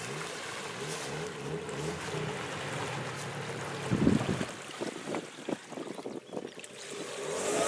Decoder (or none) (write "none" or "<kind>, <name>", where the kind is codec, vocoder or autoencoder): none